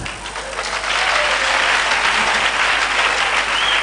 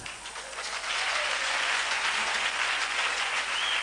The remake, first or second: second